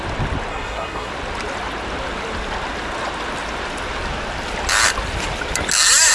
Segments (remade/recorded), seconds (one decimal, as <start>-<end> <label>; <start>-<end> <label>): 0.0-0.5 recorded; 0.5-1.1 remade; 1.1-6.1 recorded